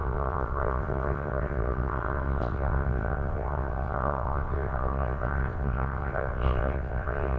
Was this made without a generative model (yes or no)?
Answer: no